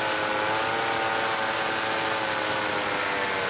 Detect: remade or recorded recorded